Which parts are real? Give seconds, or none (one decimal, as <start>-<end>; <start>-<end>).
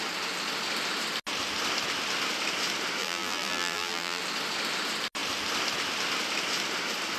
0.0-3.0; 4.2-7.2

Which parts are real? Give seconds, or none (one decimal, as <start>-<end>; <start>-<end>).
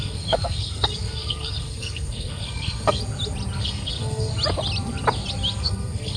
3.0-3.6; 4.3-5.6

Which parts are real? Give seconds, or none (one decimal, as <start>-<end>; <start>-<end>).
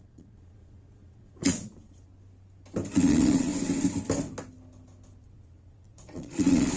2.1-2.9; 3.5-5.2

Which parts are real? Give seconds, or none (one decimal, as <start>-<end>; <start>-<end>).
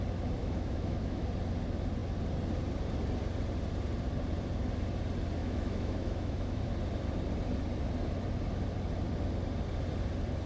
0.0-0.4; 1.2-5.4; 6.6-10.5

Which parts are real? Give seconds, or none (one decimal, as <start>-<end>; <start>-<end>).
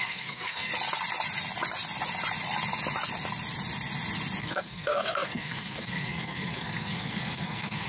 0.7-4.4